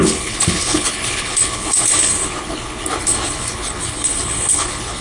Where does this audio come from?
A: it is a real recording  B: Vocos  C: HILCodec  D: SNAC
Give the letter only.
C